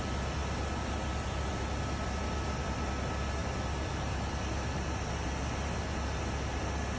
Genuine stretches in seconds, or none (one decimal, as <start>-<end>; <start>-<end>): 0.0-7.0